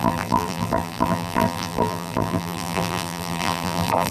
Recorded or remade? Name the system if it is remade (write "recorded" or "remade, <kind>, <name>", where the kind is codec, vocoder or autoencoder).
remade, vocoder, BigVGAN v2